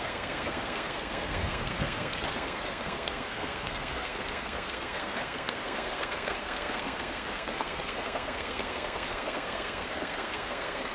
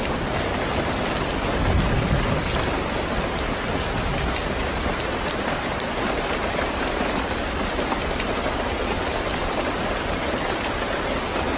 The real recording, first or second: second